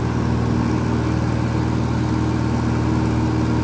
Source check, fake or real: real